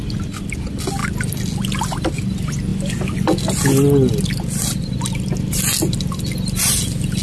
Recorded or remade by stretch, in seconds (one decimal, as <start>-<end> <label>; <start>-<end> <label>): 0.0-7.2 recorded